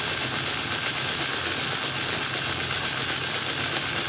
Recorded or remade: recorded